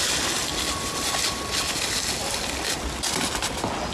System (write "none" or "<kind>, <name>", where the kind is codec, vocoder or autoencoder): none